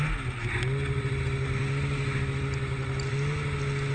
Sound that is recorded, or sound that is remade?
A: recorded